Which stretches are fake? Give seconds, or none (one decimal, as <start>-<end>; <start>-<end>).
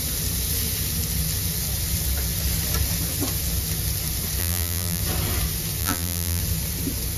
4.4-5.0; 5.8-6.4